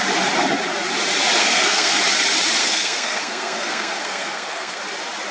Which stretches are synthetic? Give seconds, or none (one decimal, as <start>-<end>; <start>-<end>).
1.4-2.0; 2.6-4.8